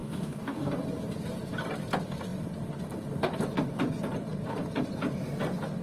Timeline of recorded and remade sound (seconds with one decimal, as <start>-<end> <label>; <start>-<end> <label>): 0.0-0.7 remade; 0.7-5.8 recorded